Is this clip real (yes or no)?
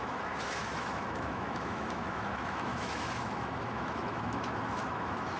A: no